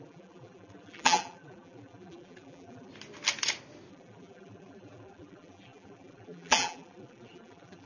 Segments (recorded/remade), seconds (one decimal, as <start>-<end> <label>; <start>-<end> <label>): 0.0-2.9 remade; 2.9-3.9 recorded; 3.9-7.9 remade